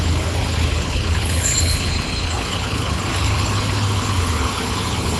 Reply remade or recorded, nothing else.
remade